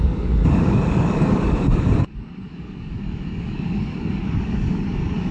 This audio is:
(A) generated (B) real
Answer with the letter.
A